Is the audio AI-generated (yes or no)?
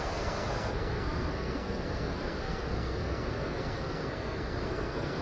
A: yes